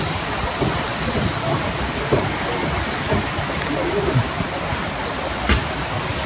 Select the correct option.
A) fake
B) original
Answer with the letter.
B